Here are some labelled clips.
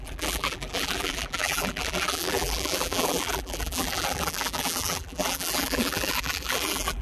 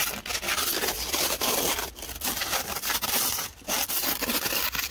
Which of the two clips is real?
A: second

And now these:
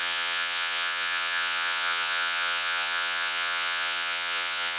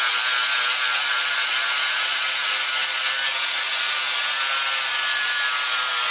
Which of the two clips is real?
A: second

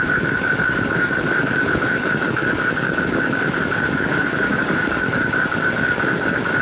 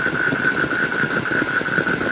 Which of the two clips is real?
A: second